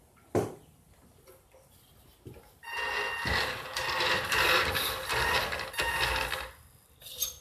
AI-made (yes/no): no